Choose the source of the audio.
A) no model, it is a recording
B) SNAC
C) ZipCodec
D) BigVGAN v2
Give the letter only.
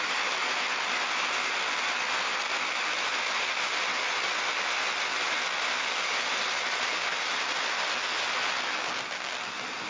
A